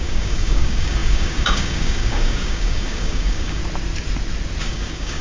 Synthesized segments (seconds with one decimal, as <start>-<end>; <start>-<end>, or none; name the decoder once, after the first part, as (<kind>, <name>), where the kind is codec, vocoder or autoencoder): 0.0-3.6 (codec, DAC); 4.6-5.2